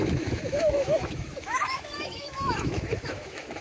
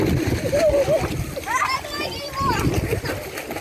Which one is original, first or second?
second